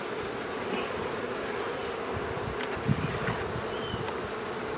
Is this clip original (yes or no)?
yes